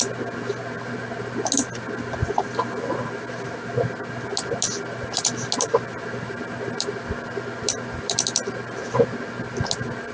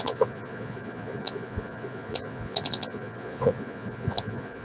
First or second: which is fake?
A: second